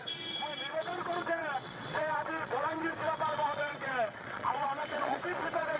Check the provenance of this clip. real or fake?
fake